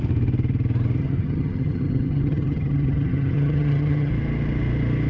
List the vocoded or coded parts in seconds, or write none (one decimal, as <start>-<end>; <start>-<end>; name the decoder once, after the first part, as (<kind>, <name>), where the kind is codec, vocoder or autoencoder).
1.0-4.1 (vocoder, HiFi-GAN)